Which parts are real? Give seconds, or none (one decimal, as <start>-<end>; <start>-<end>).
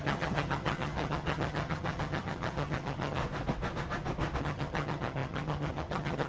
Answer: 3.2-4.4